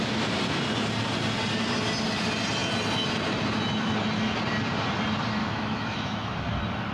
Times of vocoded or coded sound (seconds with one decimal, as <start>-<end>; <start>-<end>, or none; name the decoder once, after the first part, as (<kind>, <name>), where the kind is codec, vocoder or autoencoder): 5.4-6.3 (autoencoder, DAC-VAE)